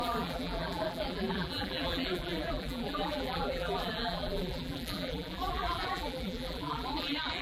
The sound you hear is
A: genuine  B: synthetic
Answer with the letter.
B